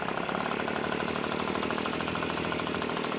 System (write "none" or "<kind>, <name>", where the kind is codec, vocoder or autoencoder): none